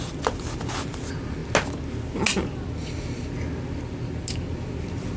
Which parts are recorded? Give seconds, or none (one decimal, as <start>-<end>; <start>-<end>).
0.0-5.2